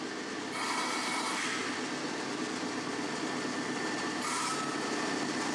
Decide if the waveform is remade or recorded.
recorded